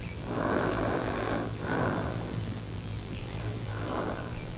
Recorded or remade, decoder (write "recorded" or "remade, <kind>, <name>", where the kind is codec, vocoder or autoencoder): remade, vocoder, BigVGAN v2